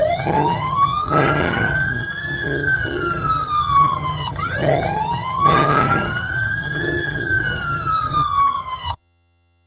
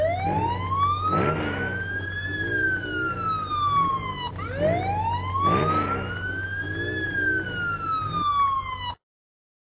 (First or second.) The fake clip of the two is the first